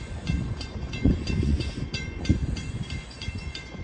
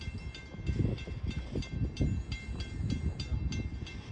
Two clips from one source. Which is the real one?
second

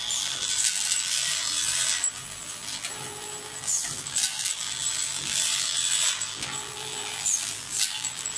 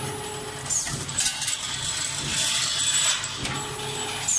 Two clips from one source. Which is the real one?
second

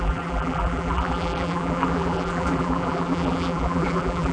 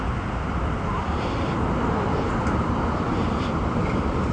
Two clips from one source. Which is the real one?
second